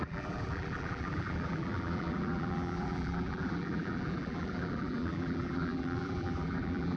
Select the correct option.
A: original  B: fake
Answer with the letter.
B